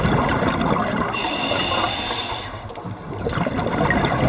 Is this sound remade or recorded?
recorded